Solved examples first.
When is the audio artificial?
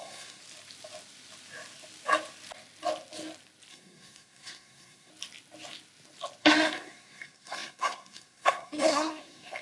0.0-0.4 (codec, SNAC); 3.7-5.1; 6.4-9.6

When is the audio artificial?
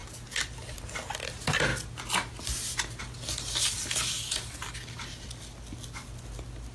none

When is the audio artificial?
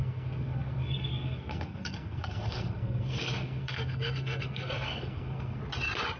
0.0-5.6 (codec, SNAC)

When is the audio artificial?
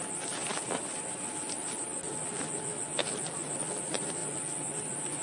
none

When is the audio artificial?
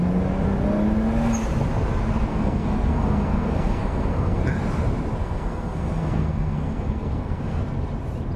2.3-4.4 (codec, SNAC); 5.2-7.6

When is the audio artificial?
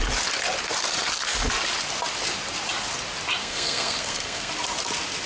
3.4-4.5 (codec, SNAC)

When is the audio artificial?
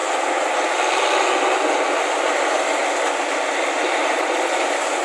none